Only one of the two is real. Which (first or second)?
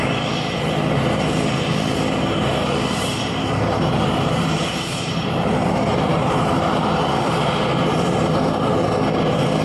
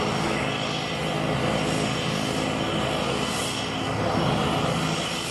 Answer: second